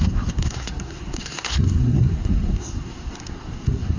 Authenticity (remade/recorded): remade